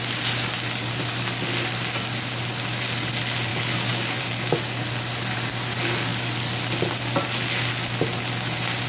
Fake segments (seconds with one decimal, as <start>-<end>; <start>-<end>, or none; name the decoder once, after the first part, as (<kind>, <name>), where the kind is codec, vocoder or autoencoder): 3.5-4.2 (codec, DAC)